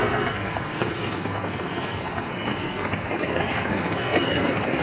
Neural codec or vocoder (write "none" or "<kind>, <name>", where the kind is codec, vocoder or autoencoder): codec, SNAC